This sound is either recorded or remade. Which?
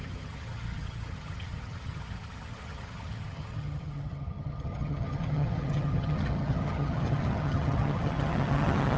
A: remade